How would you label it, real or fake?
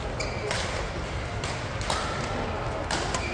real